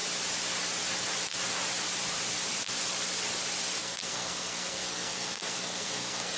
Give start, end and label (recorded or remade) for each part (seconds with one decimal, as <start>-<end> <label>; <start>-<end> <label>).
0.0-3.8 recorded; 3.8-6.4 remade